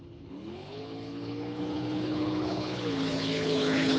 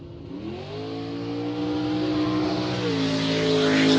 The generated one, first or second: first